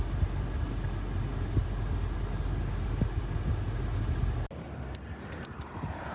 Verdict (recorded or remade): recorded